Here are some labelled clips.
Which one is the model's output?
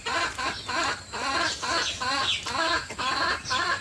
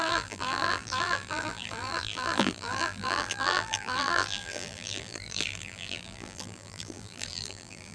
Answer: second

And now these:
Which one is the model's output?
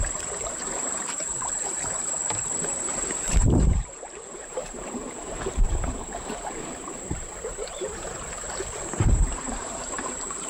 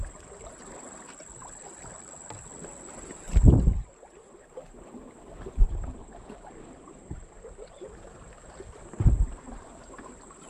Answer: first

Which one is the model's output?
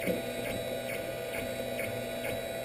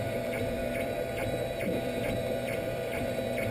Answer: second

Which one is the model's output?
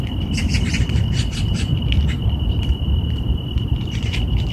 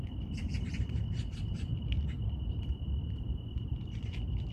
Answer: first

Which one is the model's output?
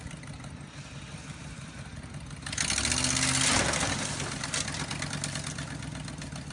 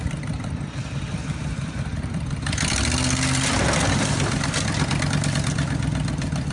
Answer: second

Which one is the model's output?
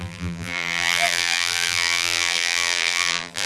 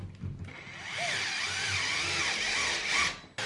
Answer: first